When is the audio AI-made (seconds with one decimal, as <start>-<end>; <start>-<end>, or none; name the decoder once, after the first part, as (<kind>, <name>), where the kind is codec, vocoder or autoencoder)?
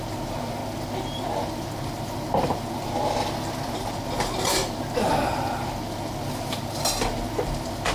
none